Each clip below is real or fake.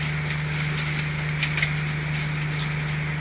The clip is real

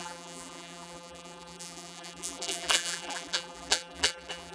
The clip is fake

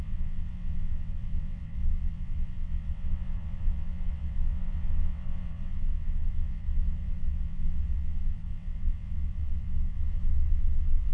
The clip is fake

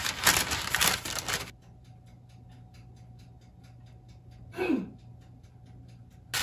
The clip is real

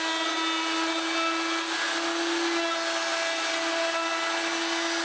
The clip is real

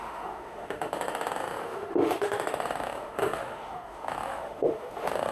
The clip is fake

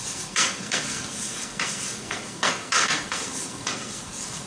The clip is fake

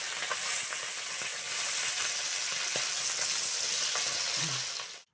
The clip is real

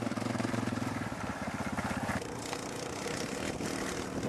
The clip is fake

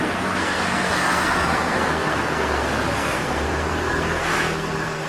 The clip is fake